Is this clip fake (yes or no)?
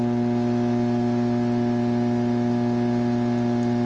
no